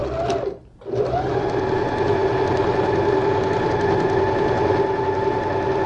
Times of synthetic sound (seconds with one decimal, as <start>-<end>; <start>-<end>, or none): none